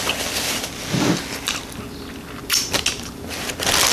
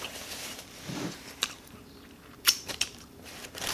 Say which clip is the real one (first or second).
first